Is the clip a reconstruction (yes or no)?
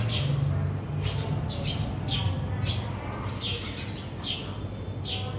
no